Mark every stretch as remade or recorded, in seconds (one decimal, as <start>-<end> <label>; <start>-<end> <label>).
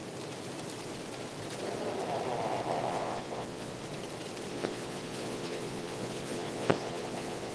0.0-2.9 recorded; 2.9-3.7 remade; 3.7-4.5 recorded; 4.5-7.5 remade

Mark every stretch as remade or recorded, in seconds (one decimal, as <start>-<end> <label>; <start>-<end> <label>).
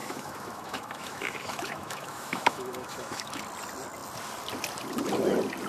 0.0-3.4 remade; 3.4-5.7 recorded